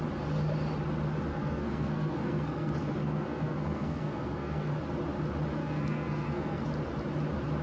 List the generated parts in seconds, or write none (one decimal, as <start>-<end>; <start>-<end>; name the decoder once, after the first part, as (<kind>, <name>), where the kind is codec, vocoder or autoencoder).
1.3-4.7 (codec, SNAC); 5.6-6.6